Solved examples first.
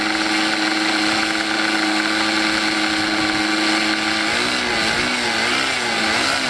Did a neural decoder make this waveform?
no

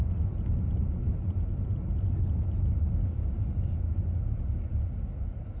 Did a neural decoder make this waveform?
no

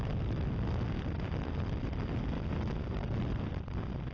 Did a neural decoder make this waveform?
no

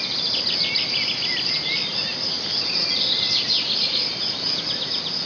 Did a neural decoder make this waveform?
no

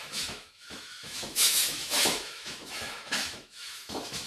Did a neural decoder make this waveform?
yes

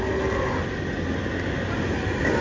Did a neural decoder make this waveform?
no